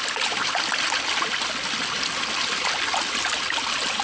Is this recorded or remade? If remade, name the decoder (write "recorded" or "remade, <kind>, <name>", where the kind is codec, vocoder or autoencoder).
recorded